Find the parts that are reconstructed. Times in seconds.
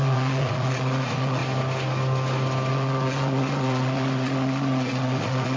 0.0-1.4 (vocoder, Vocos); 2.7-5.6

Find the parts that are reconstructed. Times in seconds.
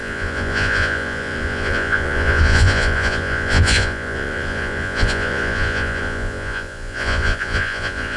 0.0-8.2 (vocoder, Vocos)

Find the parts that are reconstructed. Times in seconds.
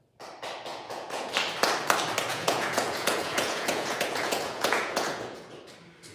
0.7-1.3 (vocoder, Vocos); 2.3-5.5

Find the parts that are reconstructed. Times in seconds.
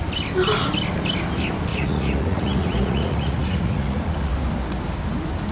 1.7-4.3 (vocoder, Vocos)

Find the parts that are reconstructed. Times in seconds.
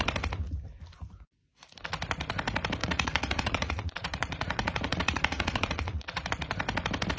2.8-6.3 (vocoder, Vocos)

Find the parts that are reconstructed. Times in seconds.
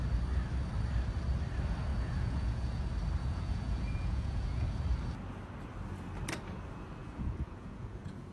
1.9-2.8 (vocoder, Vocos); 3.2-4.8; 7.0-8.3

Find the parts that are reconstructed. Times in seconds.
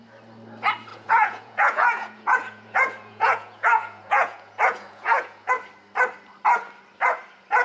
0.9-5.5 (vocoder, Vocos)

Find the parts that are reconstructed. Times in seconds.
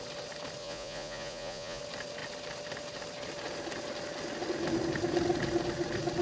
0.6-1.8 (vocoder, Vocos)